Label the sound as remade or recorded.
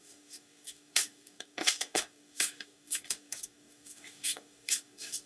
remade